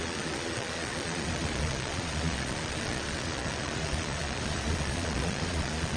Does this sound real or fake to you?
fake